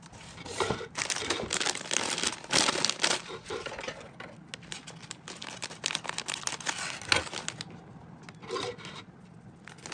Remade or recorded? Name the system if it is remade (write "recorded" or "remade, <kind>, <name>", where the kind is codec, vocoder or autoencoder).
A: recorded